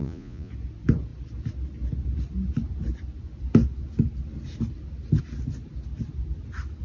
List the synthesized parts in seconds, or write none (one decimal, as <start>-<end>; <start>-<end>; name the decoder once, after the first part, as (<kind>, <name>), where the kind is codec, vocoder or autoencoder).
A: 0.0-0.5 (vocoder, Vocos)